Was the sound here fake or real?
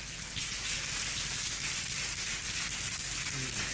real